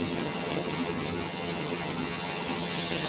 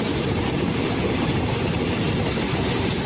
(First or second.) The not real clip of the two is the first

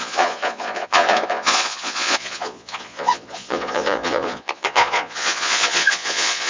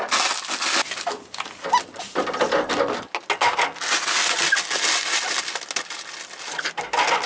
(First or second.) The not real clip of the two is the first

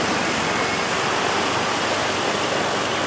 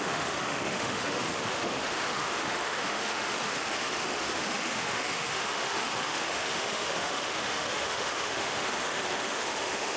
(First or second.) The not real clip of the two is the second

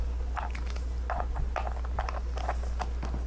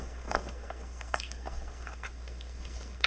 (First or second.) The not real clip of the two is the second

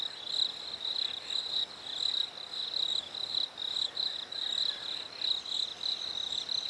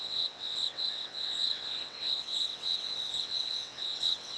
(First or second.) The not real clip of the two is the second